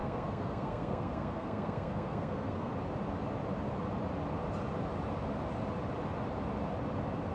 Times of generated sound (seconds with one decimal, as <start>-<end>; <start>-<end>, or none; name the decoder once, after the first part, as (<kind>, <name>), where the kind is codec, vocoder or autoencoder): 0.0-2.7 (codec, SNAC)